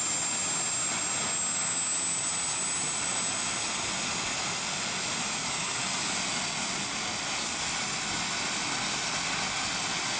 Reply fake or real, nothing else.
real